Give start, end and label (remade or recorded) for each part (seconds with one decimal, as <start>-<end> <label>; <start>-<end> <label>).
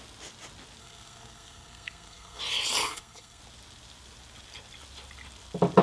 0.0-0.8 recorded; 0.8-2.4 remade; 2.4-2.8 recorded; 2.8-3.4 remade; 3.4-5.8 recorded